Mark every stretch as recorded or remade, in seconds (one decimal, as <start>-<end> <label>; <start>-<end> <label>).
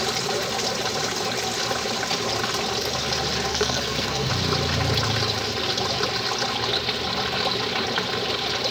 0.0-3.5 recorded; 3.5-4.3 remade; 4.3-8.7 recorded